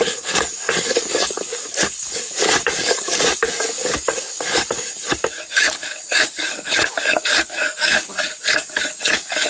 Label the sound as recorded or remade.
remade